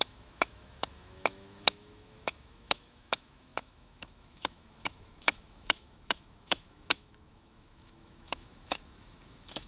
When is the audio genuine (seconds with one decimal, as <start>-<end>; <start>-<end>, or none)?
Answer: none